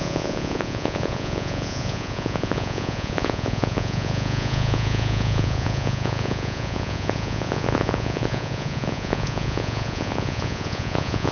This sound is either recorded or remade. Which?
remade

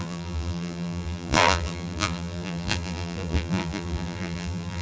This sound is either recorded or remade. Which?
remade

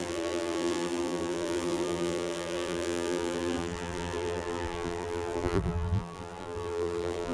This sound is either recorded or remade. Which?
remade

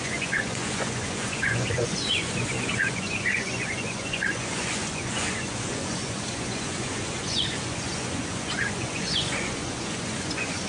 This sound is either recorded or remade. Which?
remade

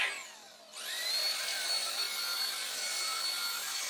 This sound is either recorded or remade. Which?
remade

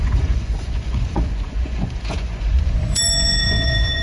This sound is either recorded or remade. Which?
remade